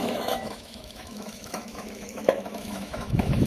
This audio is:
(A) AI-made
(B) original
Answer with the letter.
A